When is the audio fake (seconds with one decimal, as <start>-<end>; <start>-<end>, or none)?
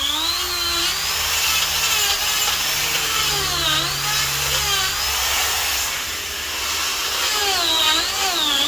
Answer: none